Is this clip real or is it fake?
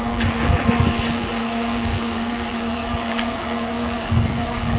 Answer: fake